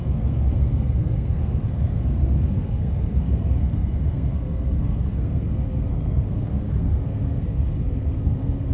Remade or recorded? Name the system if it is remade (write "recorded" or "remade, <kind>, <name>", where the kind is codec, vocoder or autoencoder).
remade, codec, SNAC